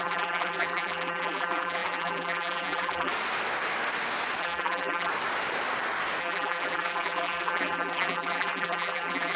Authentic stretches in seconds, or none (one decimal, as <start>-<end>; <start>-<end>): 3.1-4.4; 5.1-6.2